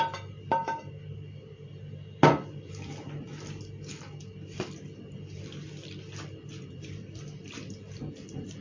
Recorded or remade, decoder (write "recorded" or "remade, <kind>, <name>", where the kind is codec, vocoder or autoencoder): remade, vocoder, BigVGAN v2